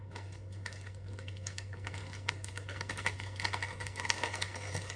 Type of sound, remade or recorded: remade